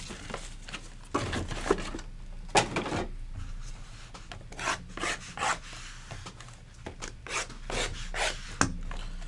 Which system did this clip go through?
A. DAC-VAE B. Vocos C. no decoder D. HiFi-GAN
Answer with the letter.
C